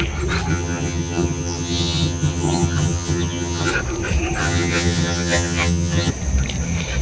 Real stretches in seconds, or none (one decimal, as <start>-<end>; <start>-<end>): 0.0-0.5; 3.7-4.4; 6.1-7.0